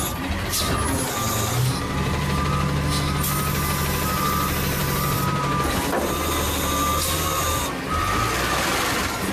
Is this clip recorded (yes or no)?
yes